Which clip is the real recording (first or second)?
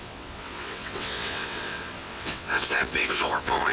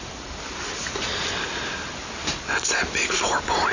second